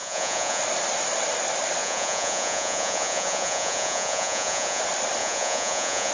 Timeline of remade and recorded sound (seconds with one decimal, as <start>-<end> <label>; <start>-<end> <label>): 0.0-0.6 remade; 0.6-1.8 recorded; 1.8-4.8 remade; 4.8-5.2 recorded; 5.2-6.1 remade